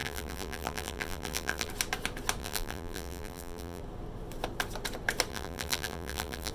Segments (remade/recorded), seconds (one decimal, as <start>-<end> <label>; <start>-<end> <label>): 0.0-1.7 remade; 1.7-2.4 recorded; 2.4-3.8 remade; 3.8-5.3 recorded; 5.3-6.5 remade